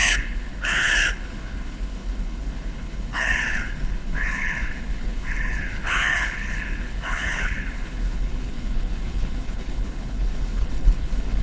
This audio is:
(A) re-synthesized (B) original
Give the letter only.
A